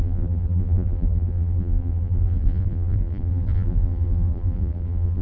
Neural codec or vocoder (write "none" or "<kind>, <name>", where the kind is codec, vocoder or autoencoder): vocoder, BigVGAN v2